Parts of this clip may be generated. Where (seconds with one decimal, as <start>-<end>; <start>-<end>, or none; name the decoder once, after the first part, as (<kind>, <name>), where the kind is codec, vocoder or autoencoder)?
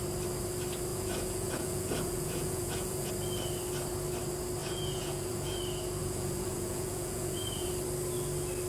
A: 0.9-3.1 (vocoder, Vocos); 4.6-5.6; 6.0-7.7